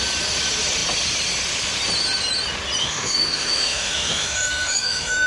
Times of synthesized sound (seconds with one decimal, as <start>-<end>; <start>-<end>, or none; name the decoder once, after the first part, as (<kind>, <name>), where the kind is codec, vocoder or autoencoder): 2.8-5.3 (autoencoder, DAC-VAE)